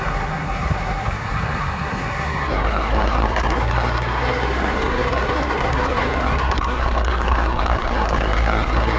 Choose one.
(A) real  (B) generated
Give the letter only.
B